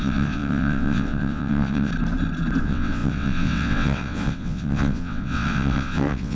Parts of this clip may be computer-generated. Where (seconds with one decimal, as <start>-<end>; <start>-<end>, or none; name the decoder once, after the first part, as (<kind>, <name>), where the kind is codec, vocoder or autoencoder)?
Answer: 0.0-1.9 (vocoder, WaveNeXt); 2.6-6.3